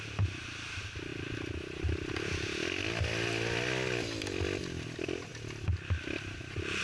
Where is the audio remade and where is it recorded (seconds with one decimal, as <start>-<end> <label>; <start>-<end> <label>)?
0.0-6.8 recorded